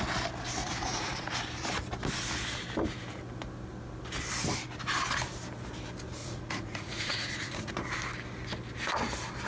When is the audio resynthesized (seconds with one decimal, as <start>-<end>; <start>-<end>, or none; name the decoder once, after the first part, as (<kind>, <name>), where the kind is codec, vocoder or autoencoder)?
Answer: 0.6-1.3 (vocoder, Vocos); 6.2-7.7